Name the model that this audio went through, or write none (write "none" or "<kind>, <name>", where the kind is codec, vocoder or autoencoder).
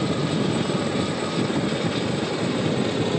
none